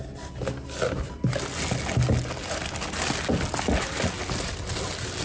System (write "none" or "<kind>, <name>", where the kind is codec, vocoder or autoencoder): none